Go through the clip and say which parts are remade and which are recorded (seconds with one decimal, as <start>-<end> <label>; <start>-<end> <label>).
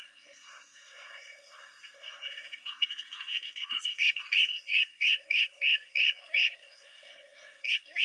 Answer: 0.0-8.0 remade